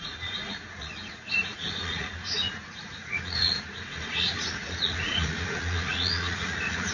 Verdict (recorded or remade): remade